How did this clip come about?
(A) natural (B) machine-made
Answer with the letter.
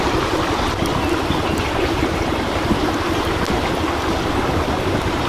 A